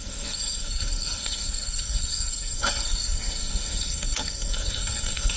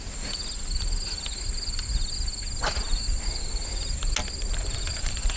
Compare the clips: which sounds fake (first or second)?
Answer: first